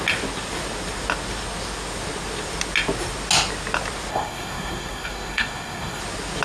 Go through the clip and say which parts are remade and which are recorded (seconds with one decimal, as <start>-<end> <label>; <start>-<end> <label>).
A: 0.0-4.1 recorded; 4.1-6.0 remade; 6.0-6.4 recorded